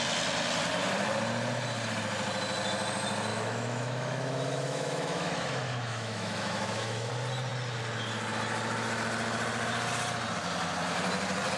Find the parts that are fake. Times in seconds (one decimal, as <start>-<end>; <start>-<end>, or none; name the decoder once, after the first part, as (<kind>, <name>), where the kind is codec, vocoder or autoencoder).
3.3-7.1 (autoencoder, DAC-VAE)